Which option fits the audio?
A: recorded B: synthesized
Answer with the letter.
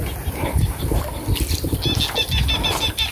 A